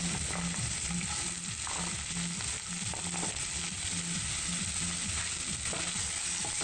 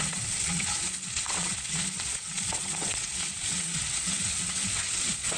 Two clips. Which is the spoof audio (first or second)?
second